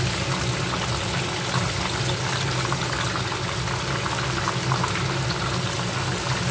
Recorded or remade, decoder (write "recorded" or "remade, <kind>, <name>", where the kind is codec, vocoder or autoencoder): recorded